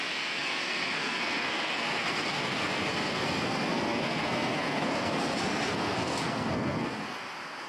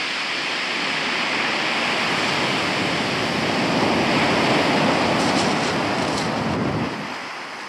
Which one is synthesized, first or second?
first